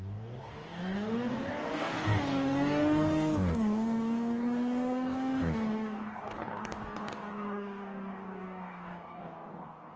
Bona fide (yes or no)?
no